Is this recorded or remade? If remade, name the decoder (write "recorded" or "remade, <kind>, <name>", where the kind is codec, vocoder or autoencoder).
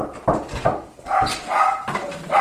remade, vocoder, BigVGAN v2